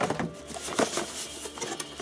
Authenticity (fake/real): real